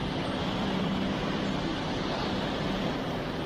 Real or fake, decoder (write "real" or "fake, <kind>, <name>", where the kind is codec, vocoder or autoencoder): fake, vocoder, BigVGAN v2